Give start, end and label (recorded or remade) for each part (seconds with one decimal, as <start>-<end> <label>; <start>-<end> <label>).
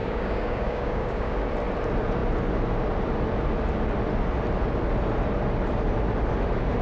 0.0-1.4 remade; 1.4-6.8 recorded